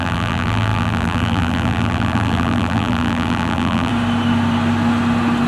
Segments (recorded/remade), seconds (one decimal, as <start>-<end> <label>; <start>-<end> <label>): 0.0-3.9 remade; 3.9-5.5 recorded